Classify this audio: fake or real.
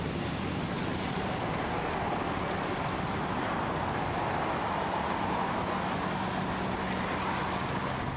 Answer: real